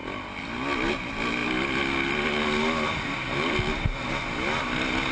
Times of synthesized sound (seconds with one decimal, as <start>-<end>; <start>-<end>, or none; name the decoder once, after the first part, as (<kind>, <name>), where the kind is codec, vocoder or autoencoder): none